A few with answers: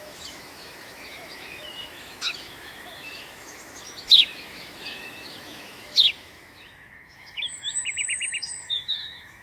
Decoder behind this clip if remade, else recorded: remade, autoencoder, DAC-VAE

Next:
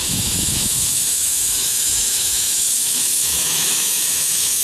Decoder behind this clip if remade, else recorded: remade, autoencoder, DAC-VAE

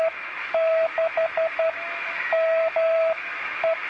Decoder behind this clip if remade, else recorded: remade, autoencoder, DAC-VAE